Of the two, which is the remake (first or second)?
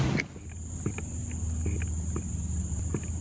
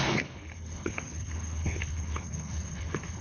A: second